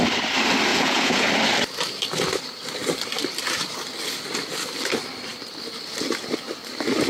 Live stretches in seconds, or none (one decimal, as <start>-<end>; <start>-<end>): 0.0-0.7; 1.3-7.1